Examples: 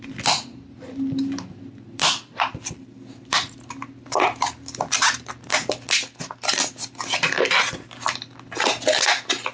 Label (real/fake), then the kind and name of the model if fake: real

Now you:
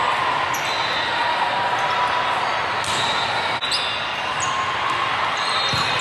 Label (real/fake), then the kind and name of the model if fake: real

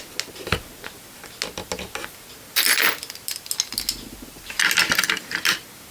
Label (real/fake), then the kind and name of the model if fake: real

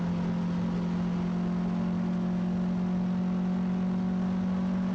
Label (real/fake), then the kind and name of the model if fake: real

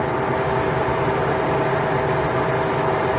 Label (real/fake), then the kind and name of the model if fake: real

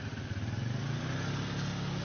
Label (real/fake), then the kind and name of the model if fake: real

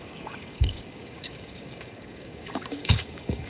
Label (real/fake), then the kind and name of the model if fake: fake, codec, DAC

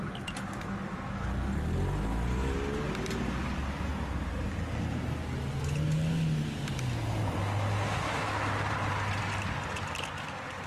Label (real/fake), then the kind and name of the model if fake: real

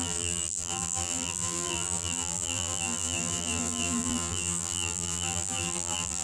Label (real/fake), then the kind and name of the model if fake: fake, vocoder, BigVGAN v2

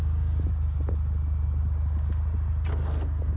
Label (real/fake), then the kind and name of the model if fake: real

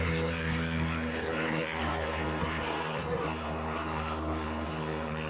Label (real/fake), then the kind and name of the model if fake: fake, codec, SNAC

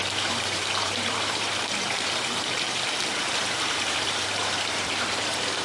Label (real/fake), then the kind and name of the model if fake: fake, vocoder, BigVGAN v2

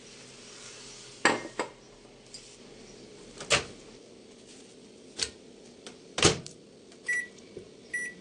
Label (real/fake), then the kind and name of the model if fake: real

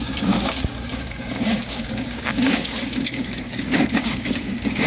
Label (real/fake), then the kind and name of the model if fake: fake, codec, DAC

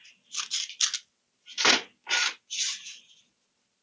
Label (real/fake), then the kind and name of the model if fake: real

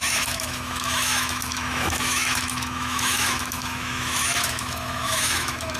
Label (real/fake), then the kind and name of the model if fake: fake, autoencoder, DAC-VAE